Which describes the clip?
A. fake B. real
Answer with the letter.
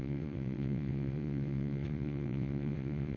A